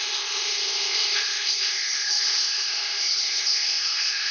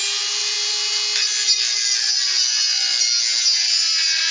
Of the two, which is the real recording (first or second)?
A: second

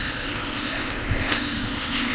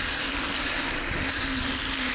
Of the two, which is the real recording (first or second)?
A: second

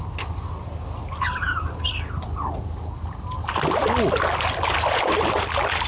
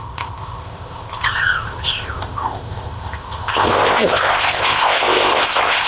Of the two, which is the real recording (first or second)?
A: first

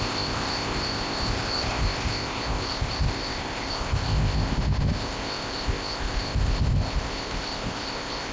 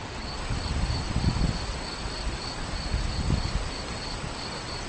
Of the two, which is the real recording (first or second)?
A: second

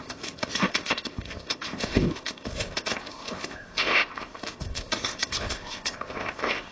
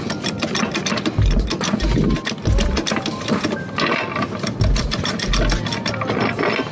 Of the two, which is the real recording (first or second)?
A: second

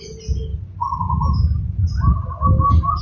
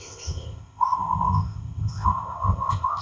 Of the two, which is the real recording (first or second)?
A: first